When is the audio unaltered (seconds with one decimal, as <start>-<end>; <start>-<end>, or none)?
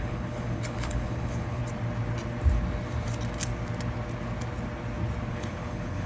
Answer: 1.6-5.3